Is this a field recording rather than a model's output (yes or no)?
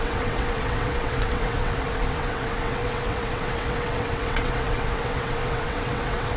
no